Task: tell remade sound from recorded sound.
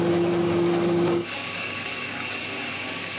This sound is remade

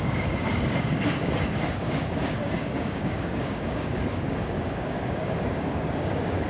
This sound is remade